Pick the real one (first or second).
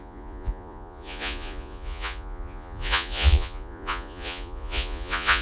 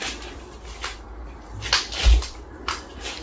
second